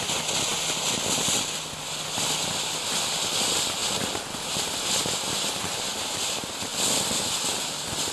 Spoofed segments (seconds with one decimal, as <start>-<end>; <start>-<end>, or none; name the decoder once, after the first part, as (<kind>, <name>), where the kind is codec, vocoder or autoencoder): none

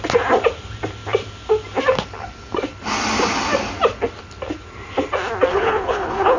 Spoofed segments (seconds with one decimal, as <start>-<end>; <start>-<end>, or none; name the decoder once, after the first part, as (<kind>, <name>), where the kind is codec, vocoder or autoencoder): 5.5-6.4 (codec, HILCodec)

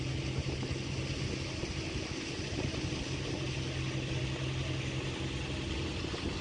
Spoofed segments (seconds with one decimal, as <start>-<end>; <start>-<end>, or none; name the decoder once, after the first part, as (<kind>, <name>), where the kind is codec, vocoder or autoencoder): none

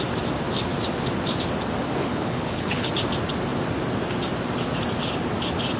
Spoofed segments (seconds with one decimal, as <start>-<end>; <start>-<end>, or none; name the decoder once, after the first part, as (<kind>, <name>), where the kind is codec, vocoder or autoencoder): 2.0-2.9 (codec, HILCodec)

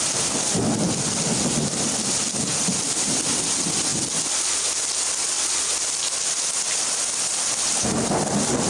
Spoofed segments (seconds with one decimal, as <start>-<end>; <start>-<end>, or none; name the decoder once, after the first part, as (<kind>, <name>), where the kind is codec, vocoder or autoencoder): none

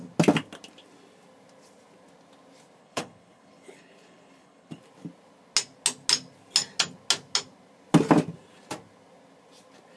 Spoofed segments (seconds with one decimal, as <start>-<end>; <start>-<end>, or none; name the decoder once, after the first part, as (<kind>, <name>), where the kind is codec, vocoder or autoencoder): 2.8-4.8 (codec, HILCodec)

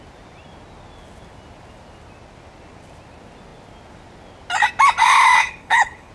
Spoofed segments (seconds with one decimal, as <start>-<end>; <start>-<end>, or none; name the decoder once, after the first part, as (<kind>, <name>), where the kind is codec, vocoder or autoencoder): 5.4-6.1 (codec, HILCodec)

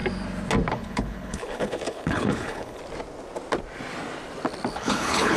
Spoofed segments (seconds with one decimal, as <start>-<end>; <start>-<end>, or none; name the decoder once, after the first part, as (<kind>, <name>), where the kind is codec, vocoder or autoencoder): 0.7-2.8 (codec, HILCodec); 4.7-5.4